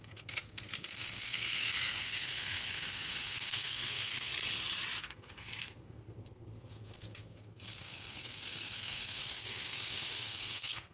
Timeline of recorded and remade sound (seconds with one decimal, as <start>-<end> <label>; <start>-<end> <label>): 0.0-4.3 remade; 4.3-5.0 recorded; 5.0-10.9 remade